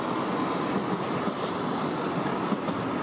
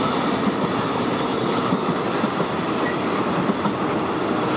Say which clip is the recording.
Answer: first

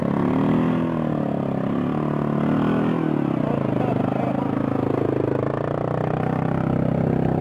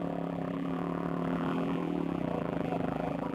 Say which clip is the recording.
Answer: first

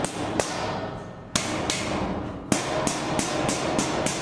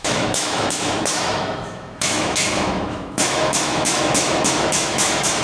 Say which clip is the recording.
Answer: first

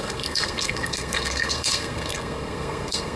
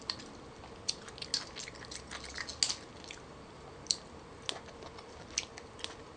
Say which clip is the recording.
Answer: second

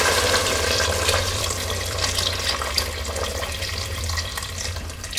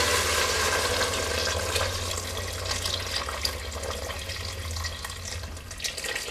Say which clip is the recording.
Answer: second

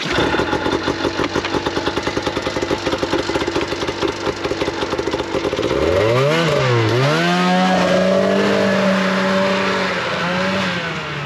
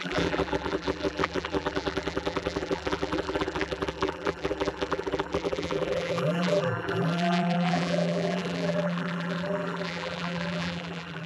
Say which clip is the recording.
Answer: first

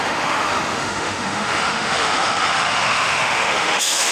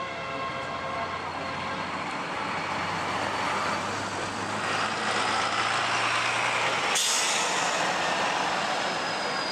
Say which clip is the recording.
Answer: second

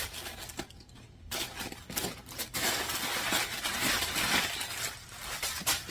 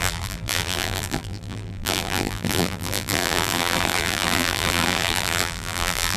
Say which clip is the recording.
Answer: first